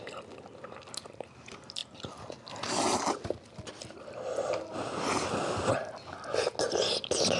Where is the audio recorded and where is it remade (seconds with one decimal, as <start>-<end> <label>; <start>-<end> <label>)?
0.0-7.4 recorded